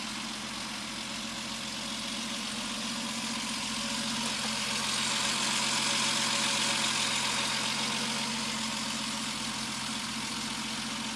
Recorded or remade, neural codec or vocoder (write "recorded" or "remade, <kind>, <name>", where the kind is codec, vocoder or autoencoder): recorded